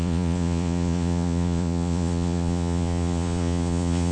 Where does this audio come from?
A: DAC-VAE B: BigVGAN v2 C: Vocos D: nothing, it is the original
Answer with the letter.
C